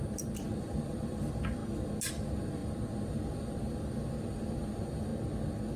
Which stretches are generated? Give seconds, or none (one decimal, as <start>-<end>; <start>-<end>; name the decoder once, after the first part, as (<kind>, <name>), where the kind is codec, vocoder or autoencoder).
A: 0.0-1.6 (vocoder, BigVGAN v2); 2.1-5.1